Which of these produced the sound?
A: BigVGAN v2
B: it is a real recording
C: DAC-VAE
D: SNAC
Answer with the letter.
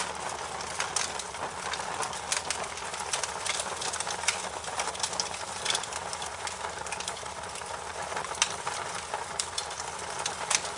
B